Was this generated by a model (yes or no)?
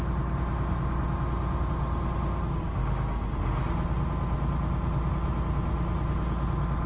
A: no